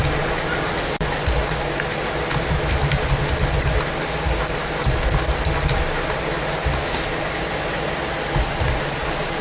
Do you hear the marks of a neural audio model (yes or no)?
no